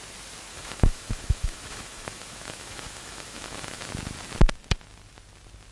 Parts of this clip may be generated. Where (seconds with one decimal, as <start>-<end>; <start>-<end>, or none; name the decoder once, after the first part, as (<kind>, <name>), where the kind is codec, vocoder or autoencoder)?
0.5-3.9 (autoencoder, DAC-VAE)